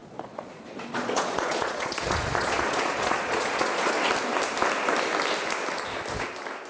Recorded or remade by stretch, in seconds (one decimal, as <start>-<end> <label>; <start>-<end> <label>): 0.0-3.9 remade; 3.9-6.7 recorded